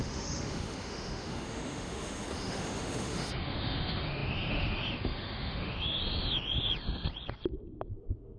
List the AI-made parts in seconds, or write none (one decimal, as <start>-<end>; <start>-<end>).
0.0-6.0; 7.9-8.4